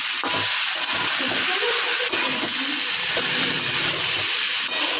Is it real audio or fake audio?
real